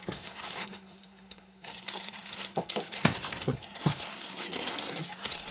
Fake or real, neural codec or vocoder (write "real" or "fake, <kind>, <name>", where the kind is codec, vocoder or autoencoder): fake, codec, SNAC